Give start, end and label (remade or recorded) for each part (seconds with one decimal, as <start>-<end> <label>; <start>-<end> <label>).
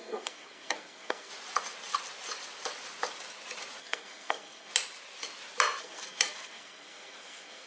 0.0-1.3 remade; 1.3-3.8 recorded; 3.8-4.7 remade; 4.7-5.8 recorded; 5.8-7.7 remade